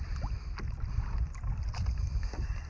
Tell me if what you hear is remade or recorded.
recorded